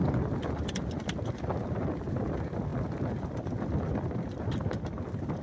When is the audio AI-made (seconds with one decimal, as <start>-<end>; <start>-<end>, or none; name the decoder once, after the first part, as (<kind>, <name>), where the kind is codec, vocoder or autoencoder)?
none